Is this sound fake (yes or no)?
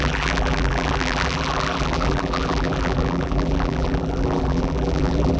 yes